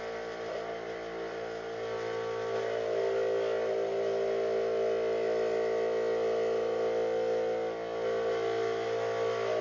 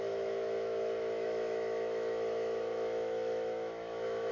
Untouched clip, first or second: first